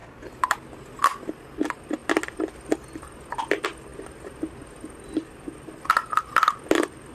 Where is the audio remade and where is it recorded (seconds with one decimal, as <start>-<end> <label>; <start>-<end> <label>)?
0.0-1.3 recorded; 1.3-2.0 remade; 2.0-3.0 recorded; 3.0-7.1 remade